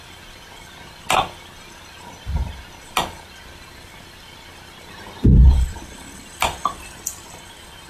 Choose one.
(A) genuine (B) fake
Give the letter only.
A